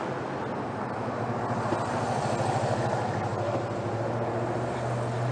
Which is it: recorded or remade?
recorded